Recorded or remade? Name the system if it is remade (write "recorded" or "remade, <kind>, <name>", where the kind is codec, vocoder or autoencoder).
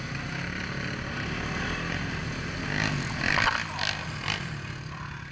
recorded